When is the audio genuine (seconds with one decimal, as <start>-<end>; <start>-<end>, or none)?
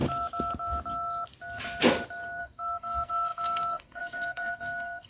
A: 0.0-2.4